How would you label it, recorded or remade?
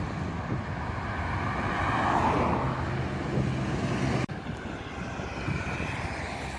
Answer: recorded